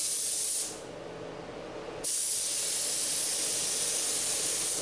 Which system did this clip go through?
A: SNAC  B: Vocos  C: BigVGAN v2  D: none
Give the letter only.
D